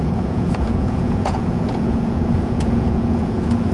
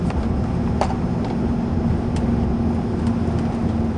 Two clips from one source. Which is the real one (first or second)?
second